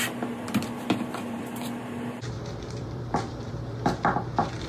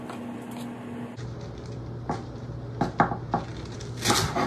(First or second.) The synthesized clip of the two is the first